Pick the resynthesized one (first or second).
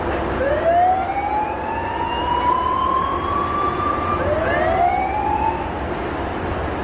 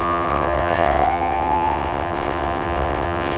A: second